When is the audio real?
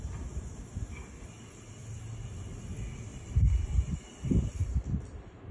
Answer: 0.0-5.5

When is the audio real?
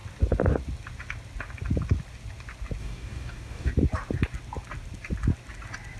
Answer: 0.0-2.8; 3.7-6.0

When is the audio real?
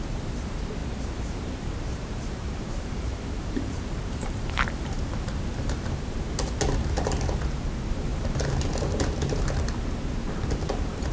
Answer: 0.0-0.8; 5.9-8.1; 8.7-11.1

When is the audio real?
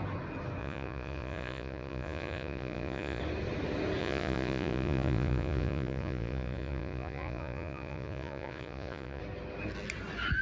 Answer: 0.0-0.6; 3.2-4.0; 9.2-10.4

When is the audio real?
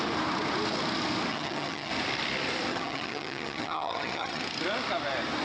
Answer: 0.0-1.3; 1.9-2.7; 4.4-5.4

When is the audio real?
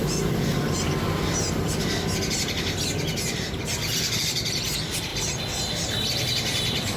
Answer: 0.0-4.2; 5.1-5.7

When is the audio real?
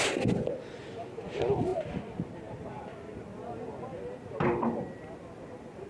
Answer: 0.0-5.9